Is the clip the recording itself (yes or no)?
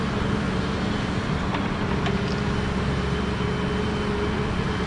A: yes